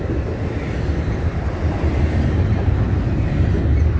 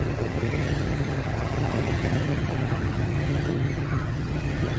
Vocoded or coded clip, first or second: second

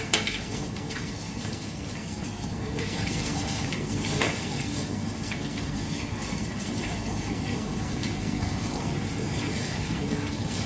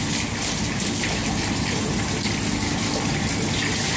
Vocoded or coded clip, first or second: first